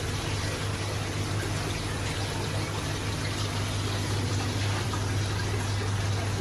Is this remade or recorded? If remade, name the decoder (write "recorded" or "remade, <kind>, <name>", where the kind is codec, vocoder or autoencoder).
recorded